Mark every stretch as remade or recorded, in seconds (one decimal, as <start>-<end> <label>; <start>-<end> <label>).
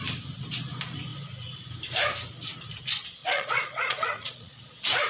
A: 0.0-3.2 recorded; 3.2-4.6 remade; 4.6-5.1 recorded